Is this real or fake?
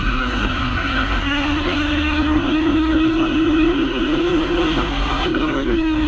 fake